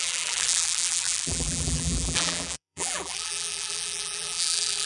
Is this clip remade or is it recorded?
remade